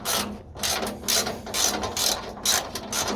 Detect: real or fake real